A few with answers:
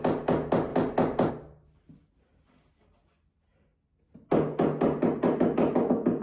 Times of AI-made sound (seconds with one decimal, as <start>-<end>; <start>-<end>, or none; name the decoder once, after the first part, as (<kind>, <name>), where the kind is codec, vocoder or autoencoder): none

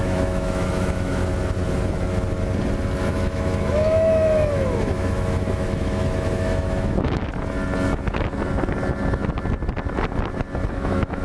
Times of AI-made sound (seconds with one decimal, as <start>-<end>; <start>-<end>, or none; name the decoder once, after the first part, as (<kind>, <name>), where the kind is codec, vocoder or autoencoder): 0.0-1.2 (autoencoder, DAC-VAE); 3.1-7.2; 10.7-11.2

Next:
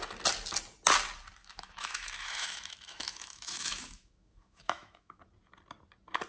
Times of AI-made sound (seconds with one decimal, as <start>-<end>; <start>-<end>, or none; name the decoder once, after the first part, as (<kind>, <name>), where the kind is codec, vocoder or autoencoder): 1.4-5.2 (autoencoder, DAC-VAE)

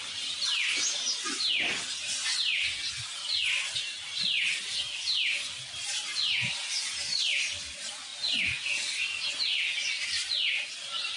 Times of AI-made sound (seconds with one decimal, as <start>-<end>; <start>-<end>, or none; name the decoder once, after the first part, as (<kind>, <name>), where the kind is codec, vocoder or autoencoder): none